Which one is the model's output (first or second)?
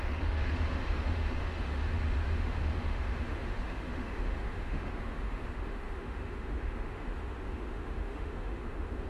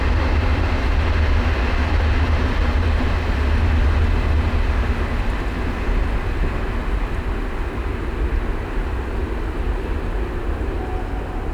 first